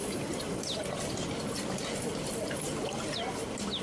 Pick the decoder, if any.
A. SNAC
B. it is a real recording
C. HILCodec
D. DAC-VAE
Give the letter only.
B